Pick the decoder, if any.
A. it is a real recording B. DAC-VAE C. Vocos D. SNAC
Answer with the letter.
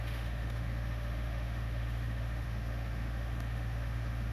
B